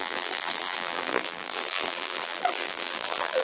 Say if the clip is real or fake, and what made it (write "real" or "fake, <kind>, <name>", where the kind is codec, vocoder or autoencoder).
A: fake, vocoder, BigVGAN v2